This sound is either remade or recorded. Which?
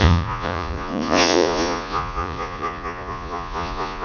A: remade